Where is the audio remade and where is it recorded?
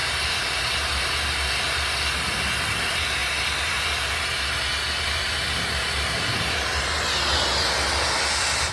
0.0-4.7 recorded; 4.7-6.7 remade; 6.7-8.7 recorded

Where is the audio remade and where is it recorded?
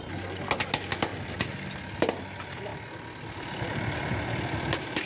0.0-2.7 recorded; 2.7-4.4 remade; 4.4-5.1 recorded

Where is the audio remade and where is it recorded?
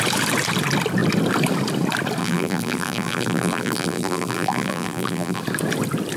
0.0-2.2 recorded; 2.2-5.4 remade; 5.4-6.2 recorded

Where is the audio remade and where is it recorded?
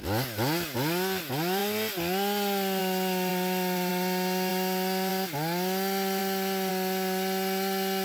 0.0-3.3 recorded; 3.3-3.9 remade; 3.9-8.0 recorded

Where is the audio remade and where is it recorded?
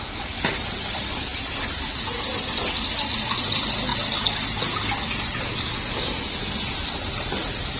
0.0-1.3 recorded; 1.3-2.7 remade; 2.7-3.9 recorded; 3.9-4.6 remade; 4.6-7.8 recorded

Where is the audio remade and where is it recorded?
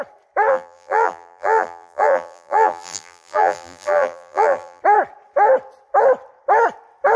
0.0-0.5 recorded; 0.5-4.8 remade; 4.8-7.2 recorded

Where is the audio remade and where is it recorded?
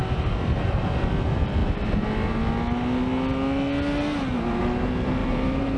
0.0-5.2 recorded; 5.2-5.8 remade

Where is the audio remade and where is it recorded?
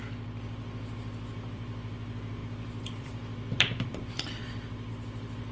0.0-5.5 remade